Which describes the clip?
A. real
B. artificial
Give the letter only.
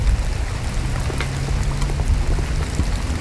A